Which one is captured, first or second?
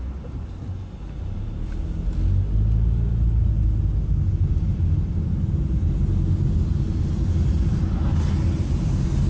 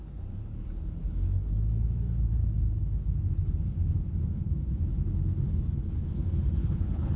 first